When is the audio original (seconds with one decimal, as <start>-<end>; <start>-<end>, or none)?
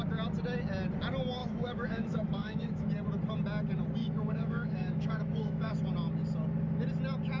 0.0-1.4; 2.9-4.0; 5.7-7.4